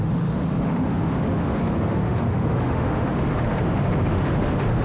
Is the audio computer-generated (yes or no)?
yes